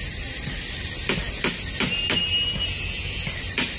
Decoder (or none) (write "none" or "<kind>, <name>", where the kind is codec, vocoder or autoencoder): none